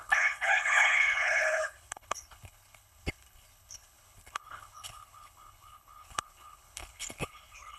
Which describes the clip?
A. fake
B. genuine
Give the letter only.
A